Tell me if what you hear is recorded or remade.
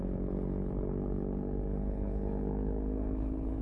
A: remade